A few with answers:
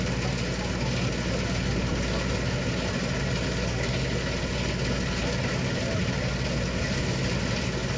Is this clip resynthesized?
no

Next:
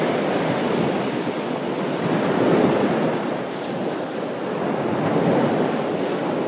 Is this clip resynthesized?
no